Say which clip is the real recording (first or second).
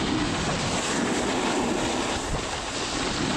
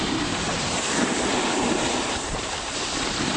first